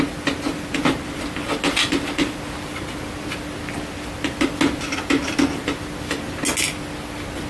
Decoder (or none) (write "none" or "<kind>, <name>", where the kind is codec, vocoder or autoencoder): none